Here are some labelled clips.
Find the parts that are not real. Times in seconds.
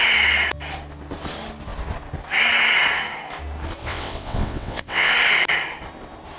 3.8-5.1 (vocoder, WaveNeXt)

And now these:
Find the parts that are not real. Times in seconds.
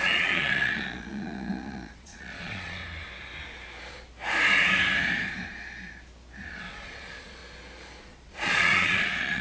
0.0-2.8 (vocoder, Vocos); 6.6-7.4; 8.0-9.4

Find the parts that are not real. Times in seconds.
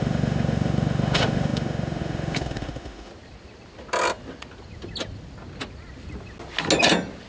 0.0-3.1 (autoencoder, DAC-VAE)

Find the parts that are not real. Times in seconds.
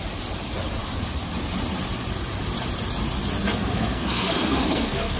3.5-5.2 (codec, SNAC)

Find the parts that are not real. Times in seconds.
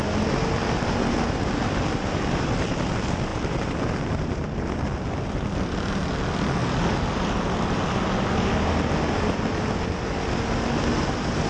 none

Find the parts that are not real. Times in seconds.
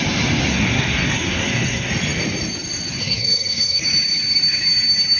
0.5-1.9 (codec, SNAC); 3.0-3.8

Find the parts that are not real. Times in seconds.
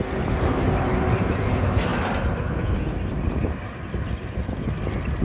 none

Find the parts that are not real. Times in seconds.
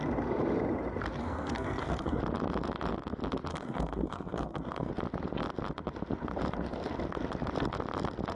1.2-2.2 (codec, SNAC); 3.5-4.9